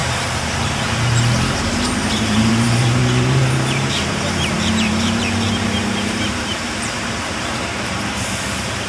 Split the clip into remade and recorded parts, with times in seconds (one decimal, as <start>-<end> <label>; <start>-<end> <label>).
0.0-8.9 remade